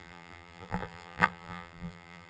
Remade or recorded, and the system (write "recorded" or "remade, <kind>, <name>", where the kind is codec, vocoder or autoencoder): remade, vocoder, BigVGAN v2